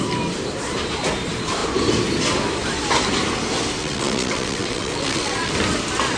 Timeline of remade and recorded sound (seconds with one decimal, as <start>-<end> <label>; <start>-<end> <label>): 0.0-3.8 recorded; 3.8-5.5 remade; 5.5-6.2 recorded